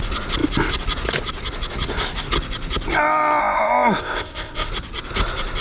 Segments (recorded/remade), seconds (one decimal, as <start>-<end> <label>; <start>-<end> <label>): 0.0-3.4 recorded; 3.4-4.7 remade; 4.7-5.6 recorded